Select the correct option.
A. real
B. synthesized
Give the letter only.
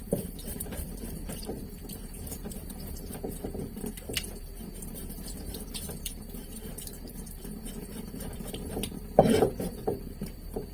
B